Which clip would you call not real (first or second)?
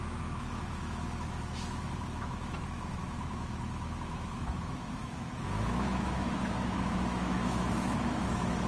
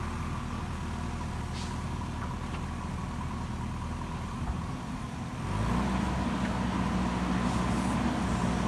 first